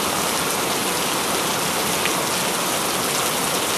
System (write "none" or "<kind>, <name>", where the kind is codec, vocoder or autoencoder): none